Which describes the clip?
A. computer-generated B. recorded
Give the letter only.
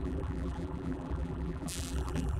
A